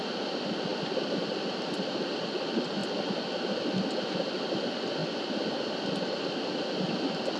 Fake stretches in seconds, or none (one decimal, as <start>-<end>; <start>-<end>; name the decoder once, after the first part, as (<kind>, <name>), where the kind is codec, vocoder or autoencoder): none